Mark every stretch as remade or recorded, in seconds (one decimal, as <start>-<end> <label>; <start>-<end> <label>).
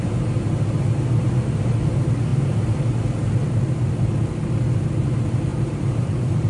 0.0-5.5 recorded; 5.5-6.5 remade